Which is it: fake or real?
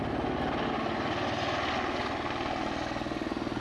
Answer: real